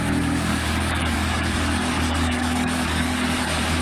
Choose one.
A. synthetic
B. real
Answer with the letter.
A